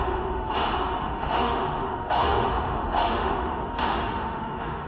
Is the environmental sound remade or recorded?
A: remade